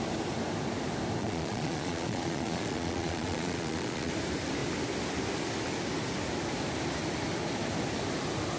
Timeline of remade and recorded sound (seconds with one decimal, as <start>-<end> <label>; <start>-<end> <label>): 0.0-1.2 recorded; 1.2-4.1 remade; 4.1-8.6 recorded